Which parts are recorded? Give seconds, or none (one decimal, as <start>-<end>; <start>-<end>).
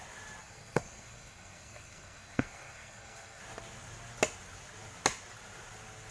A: 0.0-0.4; 3.4-6.1